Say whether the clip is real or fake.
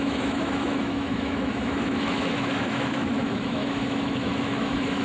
fake